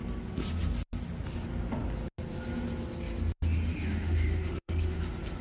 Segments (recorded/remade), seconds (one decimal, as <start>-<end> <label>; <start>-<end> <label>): 0.0-3.7 recorded; 3.7-5.0 remade; 5.0-5.4 recorded